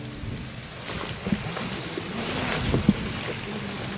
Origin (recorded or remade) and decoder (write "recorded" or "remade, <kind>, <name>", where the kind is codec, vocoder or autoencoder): recorded